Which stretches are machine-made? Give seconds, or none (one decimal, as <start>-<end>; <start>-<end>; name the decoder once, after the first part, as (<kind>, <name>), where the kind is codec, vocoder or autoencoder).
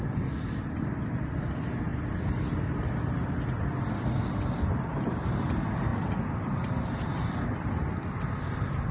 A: 0.0-8.9 (vocoder, BigVGAN v2)